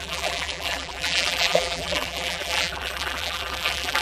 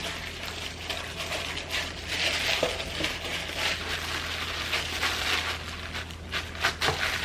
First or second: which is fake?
first